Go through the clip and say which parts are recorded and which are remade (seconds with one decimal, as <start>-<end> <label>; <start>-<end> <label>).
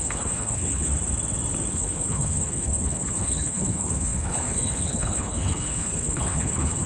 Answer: 0.0-0.9 remade; 0.9-1.7 recorded; 1.7-6.9 remade